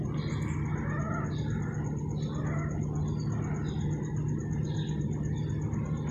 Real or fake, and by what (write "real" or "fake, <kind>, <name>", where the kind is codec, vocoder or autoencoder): real